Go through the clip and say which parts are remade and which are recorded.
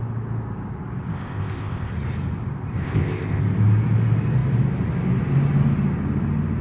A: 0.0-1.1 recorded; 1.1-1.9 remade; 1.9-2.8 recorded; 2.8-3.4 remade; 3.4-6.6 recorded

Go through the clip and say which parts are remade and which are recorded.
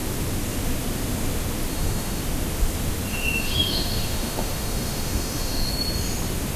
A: 0.0-1.7 recorded; 1.7-2.2 remade; 2.2-3.1 recorded; 3.1-5.7 remade; 5.7-6.6 recorded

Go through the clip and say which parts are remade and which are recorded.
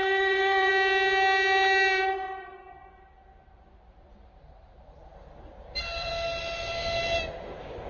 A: 0.0-0.7 remade; 0.7-5.1 recorded; 5.1-6.1 remade; 6.1-7.9 recorded